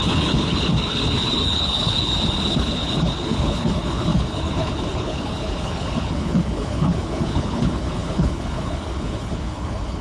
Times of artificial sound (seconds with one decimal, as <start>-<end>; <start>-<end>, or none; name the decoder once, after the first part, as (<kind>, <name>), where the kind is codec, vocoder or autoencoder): 0.0-10.0 (codec, HILCodec)